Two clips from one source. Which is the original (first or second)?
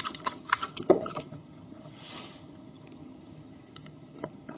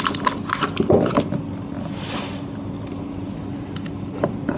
second